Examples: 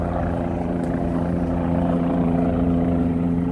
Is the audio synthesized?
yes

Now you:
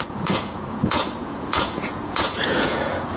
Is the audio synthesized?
yes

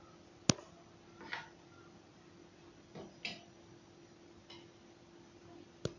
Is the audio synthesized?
no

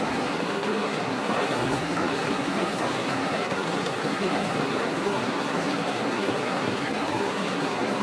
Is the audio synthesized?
yes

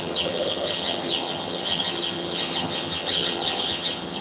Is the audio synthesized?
yes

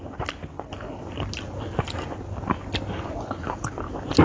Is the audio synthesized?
no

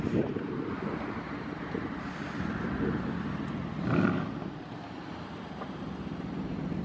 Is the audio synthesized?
yes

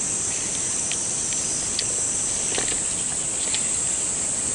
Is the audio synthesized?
no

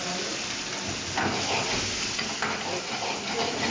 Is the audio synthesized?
no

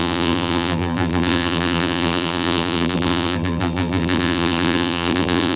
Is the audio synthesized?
yes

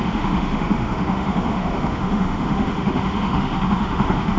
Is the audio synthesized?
yes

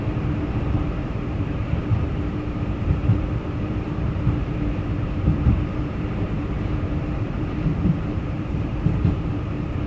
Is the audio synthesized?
yes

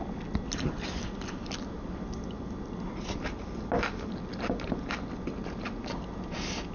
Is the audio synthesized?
no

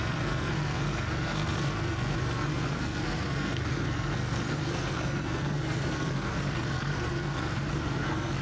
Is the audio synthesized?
yes